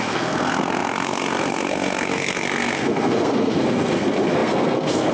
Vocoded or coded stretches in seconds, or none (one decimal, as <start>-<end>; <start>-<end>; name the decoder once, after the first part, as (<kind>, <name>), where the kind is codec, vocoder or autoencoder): 0.0-5.1 (codec, SNAC)